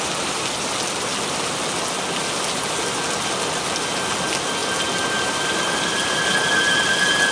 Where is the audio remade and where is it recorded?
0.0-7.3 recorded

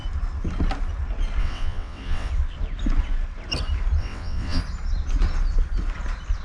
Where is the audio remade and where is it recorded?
0.0-1.4 recorded; 1.4-2.3 remade; 2.3-4.0 recorded; 4.0-4.6 remade; 4.6-6.4 recorded

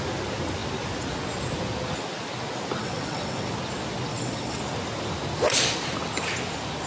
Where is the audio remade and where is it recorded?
0.0-2.8 recorded; 2.8-3.5 remade; 3.5-4.1 recorded; 4.1-4.6 remade; 4.6-6.9 recorded

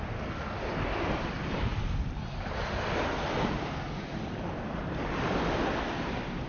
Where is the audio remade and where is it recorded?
0.0-6.5 recorded

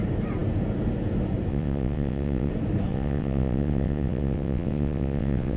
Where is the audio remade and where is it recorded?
0.0-1.5 recorded; 1.5-2.5 remade; 2.5-2.9 recorded; 2.9-5.6 remade

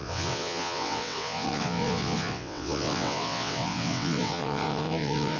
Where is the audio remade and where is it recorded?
0.0-5.4 remade

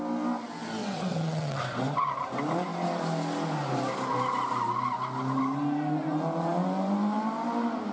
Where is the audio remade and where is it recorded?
0.0-0.8 recorded; 0.8-1.6 remade; 1.6-7.9 recorded

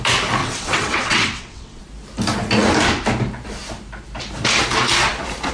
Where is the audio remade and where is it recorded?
0.0-0.4 recorded; 0.4-1.8 remade; 1.8-5.5 recorded